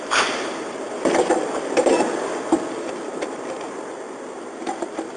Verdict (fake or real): fake